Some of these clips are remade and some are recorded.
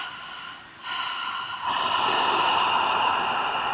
recorded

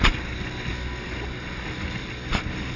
recorded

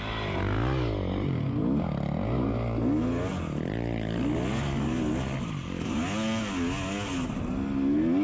recorded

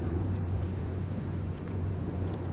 remade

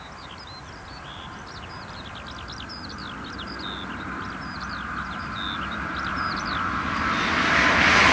recorded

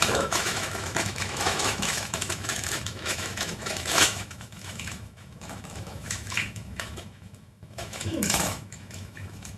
remade